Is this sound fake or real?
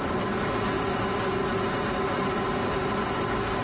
real